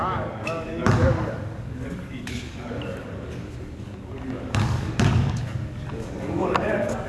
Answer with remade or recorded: remade